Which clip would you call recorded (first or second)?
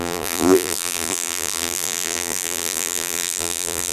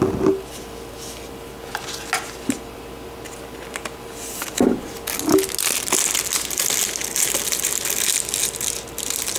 second